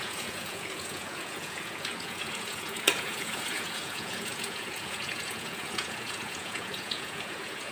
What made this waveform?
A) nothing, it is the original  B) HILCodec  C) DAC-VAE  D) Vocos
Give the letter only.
D